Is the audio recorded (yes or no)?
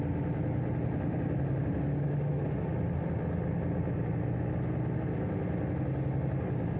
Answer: yes